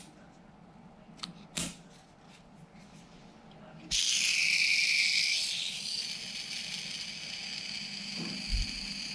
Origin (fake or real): real